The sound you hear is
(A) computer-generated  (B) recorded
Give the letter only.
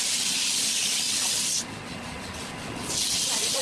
B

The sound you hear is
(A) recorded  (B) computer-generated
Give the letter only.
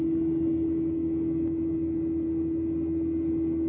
A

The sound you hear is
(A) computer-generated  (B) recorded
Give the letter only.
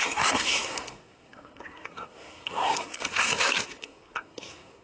A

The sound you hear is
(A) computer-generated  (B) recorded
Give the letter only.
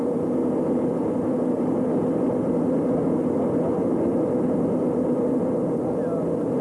B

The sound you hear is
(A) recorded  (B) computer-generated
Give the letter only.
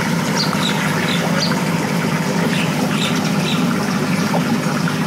A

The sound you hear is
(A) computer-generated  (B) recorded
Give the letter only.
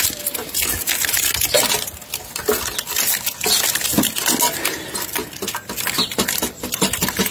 B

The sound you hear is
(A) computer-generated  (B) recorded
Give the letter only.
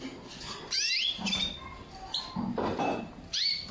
B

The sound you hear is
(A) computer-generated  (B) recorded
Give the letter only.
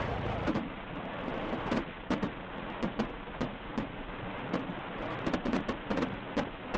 A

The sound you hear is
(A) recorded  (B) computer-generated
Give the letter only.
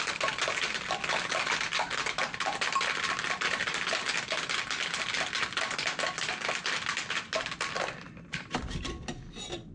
A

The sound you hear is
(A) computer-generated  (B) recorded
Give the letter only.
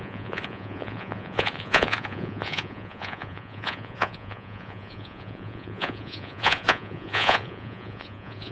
A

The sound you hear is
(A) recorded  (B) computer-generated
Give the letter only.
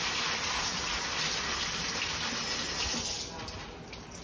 A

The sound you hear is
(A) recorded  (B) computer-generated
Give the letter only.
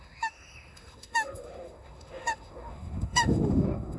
B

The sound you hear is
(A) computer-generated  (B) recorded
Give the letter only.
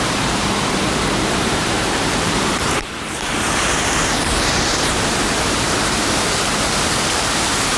A